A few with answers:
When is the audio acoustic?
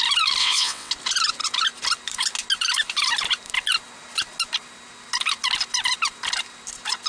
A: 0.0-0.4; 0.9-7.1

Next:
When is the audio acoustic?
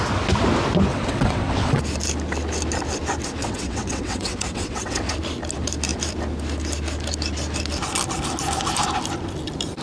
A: 0.0-0.9; 1.8-3.4; 5.1-9.8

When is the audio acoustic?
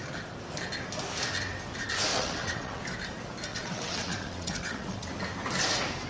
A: 0.0-2.1; 2.8-3.5; 5.1-6.1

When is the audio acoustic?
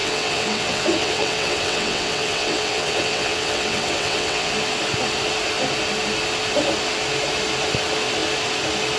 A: 4.5-9.0